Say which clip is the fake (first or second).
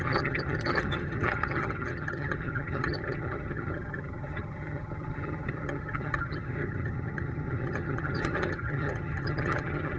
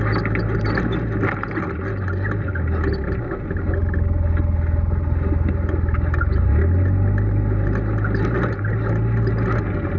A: first